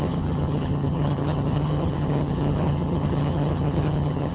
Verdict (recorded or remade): remade